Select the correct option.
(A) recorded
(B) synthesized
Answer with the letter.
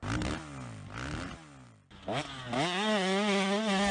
A